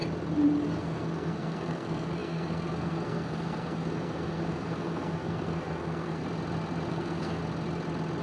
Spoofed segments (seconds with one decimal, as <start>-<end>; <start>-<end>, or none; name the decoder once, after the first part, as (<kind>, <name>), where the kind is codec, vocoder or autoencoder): 0.8-6.2 (codec, SNAC); 6.9-7.4